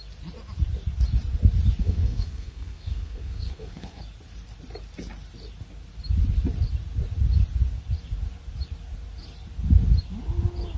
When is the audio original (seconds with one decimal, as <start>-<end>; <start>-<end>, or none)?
0.0-1.8; 4.0-10.8